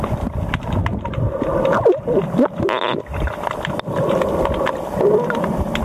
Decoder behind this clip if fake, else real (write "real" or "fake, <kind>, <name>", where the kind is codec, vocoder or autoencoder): real